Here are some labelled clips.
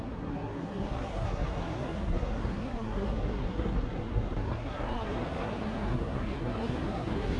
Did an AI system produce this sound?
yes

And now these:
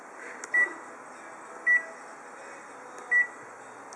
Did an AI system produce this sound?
no